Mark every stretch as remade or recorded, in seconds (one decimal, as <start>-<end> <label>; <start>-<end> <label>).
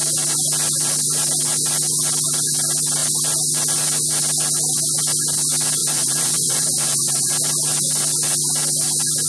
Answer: 0.0-5.8 recorded; 5.8-7.3 remade; 7.3-9.3 recorded